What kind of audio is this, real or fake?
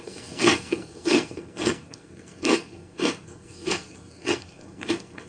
fake